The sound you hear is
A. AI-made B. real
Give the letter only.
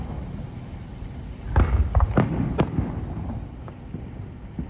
B